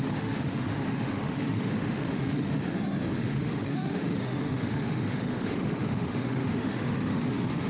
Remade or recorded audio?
remade